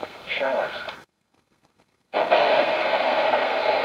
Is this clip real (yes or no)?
no